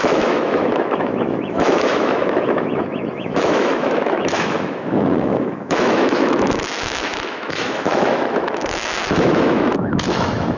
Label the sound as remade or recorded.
remade